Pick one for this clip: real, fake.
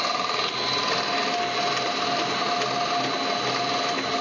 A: real